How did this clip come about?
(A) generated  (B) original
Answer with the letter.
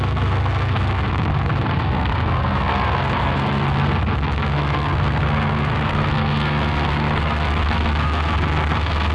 A